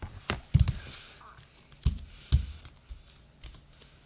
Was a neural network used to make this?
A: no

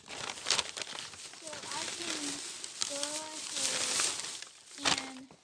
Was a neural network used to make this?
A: no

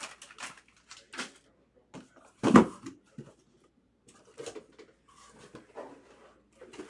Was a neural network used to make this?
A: no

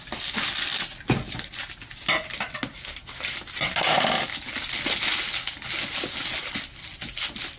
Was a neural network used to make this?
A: no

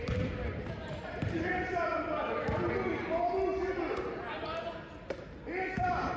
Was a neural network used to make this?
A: yes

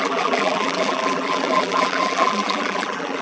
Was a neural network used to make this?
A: yes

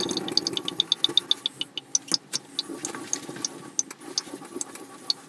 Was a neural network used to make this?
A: no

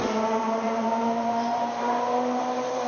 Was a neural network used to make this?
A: yes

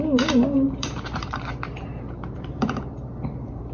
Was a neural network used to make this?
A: yes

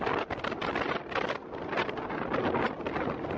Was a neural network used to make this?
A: no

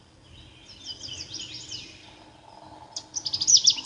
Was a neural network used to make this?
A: no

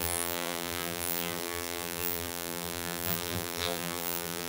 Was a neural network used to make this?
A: yes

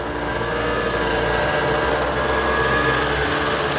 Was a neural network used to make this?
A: no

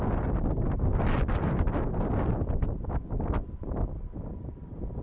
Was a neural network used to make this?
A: no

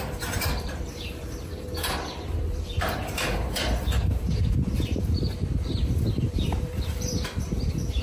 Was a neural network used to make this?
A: yes